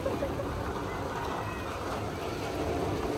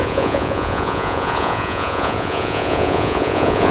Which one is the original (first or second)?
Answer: first